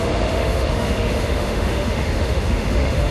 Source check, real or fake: fake